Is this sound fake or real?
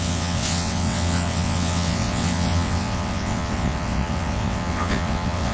fake